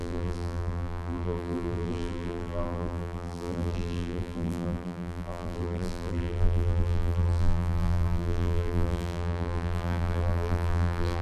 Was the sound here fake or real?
fake